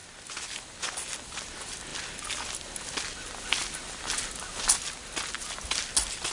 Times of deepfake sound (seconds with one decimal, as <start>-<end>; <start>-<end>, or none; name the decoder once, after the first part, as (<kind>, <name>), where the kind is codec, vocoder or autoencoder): none